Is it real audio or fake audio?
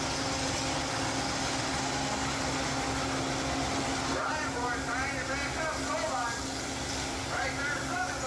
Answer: real